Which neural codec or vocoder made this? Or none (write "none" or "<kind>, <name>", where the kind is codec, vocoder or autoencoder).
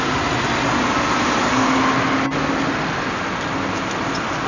none